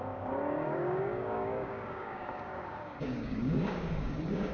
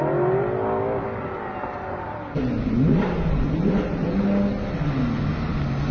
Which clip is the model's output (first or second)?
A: first